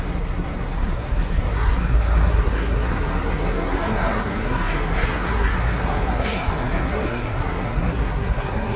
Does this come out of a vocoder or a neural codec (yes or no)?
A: yes